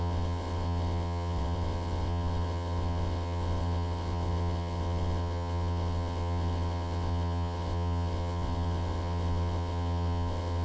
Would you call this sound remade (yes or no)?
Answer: yes